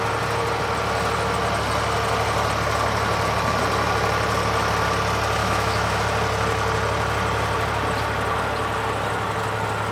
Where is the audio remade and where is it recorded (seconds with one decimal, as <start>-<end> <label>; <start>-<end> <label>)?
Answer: 0.0-5.4 recorded; 5.4-6.0 remade; 6.0-9.9 recorded